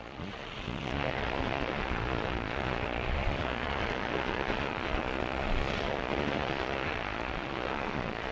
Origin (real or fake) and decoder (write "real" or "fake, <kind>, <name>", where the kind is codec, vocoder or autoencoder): fake, vocoder, Vocos